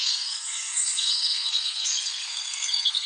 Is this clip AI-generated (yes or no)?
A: yes